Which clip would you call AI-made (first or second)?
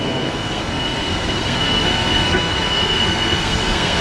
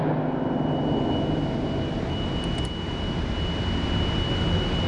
first